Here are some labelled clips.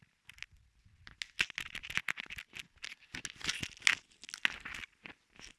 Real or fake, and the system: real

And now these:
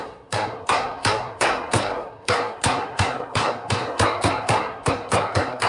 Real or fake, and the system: fake, codec, SNAC